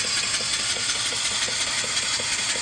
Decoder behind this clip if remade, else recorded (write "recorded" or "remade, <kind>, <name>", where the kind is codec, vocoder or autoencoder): recorded